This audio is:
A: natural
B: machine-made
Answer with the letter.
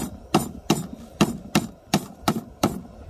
A